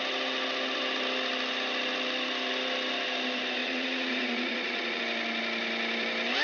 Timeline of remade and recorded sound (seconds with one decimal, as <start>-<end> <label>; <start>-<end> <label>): 0.0-3.6 recorded; 3.6-5.0 remade; 5.0-6.4 recorded